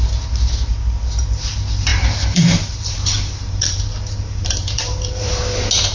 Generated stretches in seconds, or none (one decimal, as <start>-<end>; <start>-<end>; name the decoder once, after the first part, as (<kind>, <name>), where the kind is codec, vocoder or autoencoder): 1.9-5.4 (vocoder, BigVGAN v2)